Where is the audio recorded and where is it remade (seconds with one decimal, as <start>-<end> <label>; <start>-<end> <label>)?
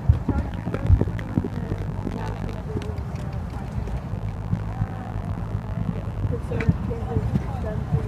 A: 0.0-0.5 recorded; 0.5-2.6 remade; 2.6-4.1 recorded; 4.1-6.3 remade; 6.3-8.1 recorded